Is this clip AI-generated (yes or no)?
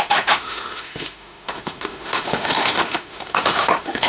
yes